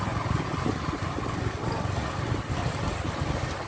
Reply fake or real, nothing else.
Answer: real